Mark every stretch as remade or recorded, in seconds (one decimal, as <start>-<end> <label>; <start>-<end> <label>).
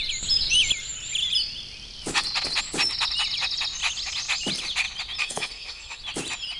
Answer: 0.0-5.2 recorded; 5.2-6.0 remade; 6.0-6.6 recorded